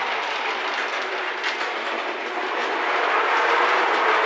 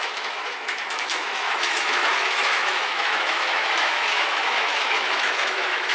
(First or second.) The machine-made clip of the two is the second